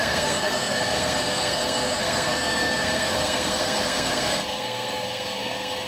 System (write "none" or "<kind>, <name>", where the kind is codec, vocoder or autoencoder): codec, SNAC